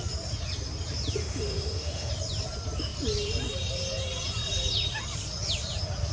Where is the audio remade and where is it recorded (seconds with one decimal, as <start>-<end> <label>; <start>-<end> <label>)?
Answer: 0.0-1.2 recorded; 1.2-2.1 remade; 2.1-6.1 recorded